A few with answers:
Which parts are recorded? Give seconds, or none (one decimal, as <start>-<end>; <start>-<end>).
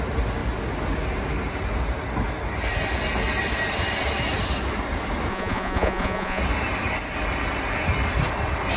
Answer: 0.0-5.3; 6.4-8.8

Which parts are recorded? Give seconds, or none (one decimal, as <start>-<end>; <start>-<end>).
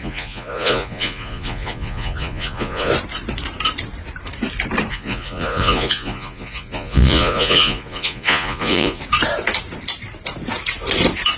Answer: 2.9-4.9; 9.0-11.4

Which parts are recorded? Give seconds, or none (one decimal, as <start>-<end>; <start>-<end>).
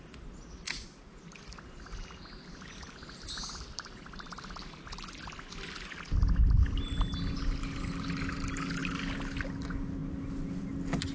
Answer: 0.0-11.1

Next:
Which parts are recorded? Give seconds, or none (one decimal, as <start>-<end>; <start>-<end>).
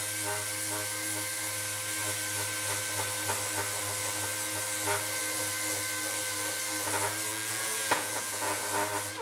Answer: 0.0-7.3; 8.6-9.2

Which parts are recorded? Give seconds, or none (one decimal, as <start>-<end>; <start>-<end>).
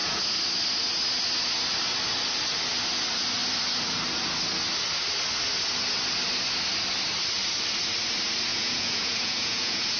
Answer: 0.0-8.5